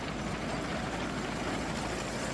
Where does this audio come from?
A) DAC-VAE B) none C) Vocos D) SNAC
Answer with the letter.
B